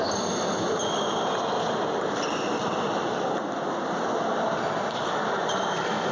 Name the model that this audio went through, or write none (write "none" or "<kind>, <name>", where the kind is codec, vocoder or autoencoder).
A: none